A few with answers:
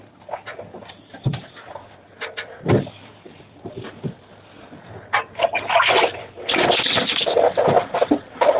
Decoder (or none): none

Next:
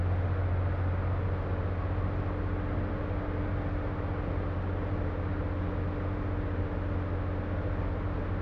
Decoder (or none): none